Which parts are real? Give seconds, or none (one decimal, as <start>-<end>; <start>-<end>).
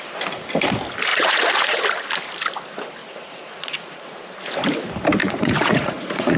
0.0-1.1; 1.8-3.0; 4.2-5.2